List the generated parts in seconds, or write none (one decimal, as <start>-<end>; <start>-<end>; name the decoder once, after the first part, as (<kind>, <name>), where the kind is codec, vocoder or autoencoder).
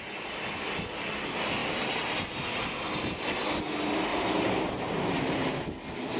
4.1-5.6 (vocoder, BigVGAN v2)